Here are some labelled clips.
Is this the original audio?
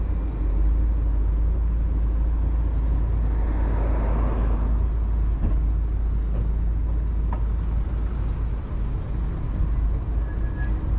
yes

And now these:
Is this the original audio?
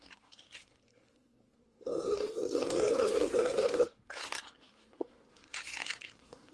no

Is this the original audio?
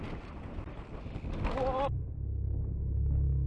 yes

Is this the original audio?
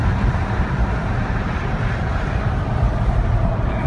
no